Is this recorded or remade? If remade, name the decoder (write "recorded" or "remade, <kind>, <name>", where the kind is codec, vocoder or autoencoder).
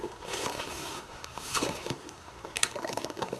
remade, codec, SNAC